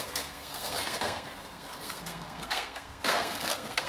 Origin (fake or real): fake